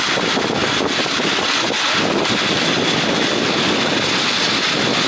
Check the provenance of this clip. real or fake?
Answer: real